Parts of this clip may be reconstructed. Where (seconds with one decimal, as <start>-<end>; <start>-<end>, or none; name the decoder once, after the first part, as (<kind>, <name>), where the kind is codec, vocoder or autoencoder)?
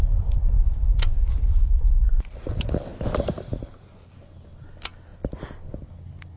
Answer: none